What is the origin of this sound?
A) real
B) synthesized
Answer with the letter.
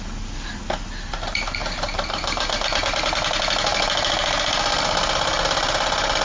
A